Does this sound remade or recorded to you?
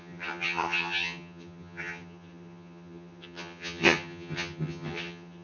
remade